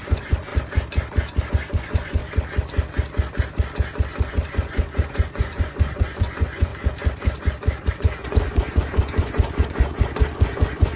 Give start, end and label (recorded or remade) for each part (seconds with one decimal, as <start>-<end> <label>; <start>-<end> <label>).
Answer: 0.0-0.5 remade; 0.5-1.5 recorded; 1.5-2.2 remade; 2.2-4.3 recorded; 4.3-6.7 remade; 6.7-7.9 recorded; 7.9-11.0 remade